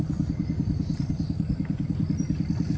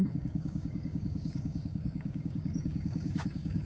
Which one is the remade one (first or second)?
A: second